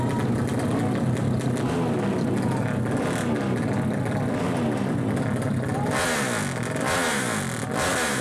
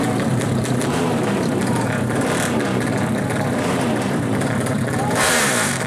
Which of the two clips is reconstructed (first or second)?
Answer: second